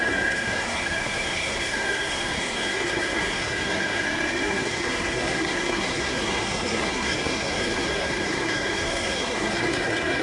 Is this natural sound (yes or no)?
no